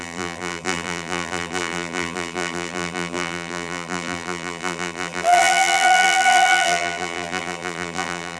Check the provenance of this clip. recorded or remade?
remade